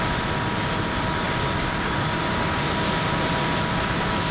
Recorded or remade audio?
recorded